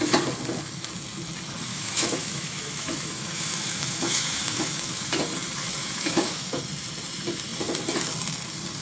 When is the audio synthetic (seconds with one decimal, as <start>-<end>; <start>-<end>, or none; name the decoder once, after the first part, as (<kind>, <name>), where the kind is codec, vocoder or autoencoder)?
1.7-5.2 (autoencoder, DAC-VAE); 5.8-6.6